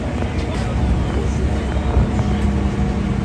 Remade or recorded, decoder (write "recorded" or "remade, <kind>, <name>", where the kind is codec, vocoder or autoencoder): recorded